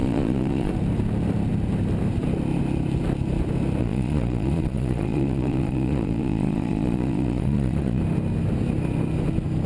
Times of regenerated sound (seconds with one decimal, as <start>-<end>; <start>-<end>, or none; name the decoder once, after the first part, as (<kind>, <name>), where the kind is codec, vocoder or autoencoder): 0.0-0.7 (vocoder, Vocos); 3.8-8.0